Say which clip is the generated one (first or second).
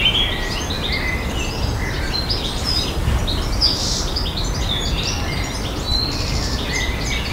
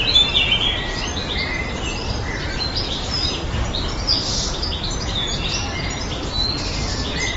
second